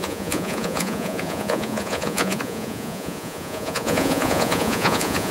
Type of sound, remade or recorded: remade